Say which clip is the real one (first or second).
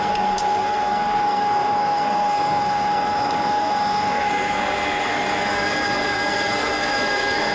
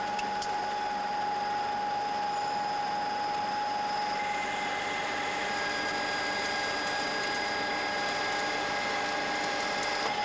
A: second